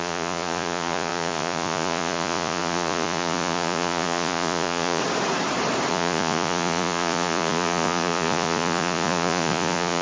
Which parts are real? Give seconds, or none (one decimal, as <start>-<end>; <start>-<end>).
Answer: 5.0-5.9